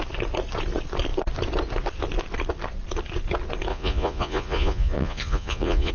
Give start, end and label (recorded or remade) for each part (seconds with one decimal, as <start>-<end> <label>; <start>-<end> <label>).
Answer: 0.0-3.7 recorded; 3.7-5.9 remade

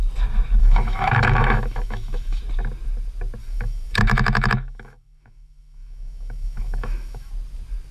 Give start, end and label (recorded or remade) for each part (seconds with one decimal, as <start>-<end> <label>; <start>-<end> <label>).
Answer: 0.0-0.6 recorded; 0.6-2.4 remade; 2.4-3.4 recorded; 3.4-7.3 remade; 7.3-7.9 recorded

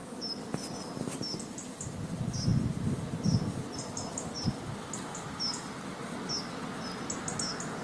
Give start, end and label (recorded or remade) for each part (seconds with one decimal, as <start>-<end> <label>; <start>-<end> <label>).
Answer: 0.0-7.8 recorded